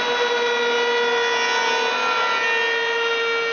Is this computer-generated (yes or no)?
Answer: no